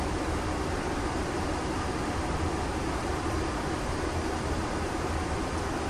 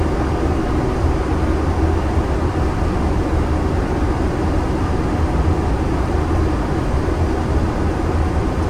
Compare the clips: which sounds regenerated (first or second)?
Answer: first